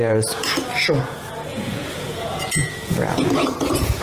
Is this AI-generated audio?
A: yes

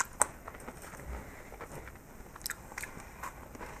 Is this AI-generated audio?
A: no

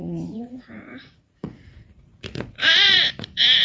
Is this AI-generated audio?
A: yes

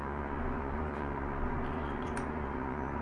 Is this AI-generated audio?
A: yes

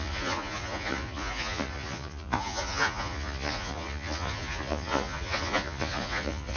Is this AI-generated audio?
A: yes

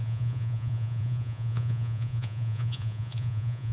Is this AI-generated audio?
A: yes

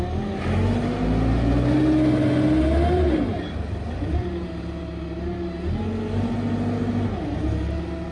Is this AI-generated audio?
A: no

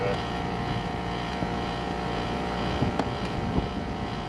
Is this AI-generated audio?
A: yes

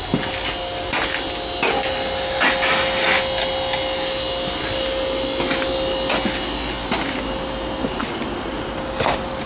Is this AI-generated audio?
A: no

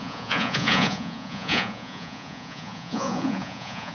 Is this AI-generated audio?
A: yes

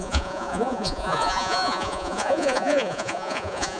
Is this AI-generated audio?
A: yes